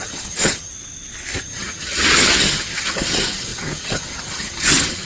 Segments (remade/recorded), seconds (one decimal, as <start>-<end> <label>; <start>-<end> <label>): 0.0-0.7 remade; 0.7-1.4 recorded; 1.4-5.1 remade